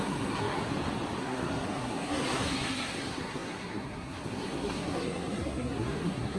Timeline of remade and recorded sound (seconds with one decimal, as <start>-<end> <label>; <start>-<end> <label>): 0.0-0.6 remade; 0.6-1.2 recorded; 1.2-6.4 remade